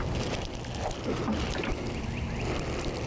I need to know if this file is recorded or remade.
recorded